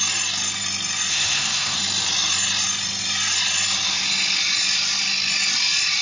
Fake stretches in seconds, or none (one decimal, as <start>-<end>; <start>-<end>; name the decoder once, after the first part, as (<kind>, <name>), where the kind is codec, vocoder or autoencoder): 1.1-1.8 (codec, SNAC)